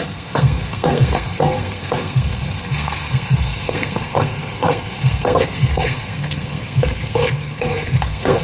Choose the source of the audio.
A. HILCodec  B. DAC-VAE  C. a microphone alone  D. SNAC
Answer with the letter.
D